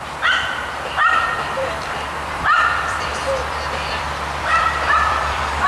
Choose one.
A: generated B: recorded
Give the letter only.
A